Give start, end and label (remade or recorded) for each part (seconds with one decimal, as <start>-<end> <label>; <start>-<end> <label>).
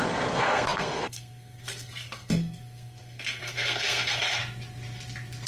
0.0-4.4 remade; 4.4-5.5 recorded